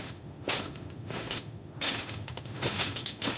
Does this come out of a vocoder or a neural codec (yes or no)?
yes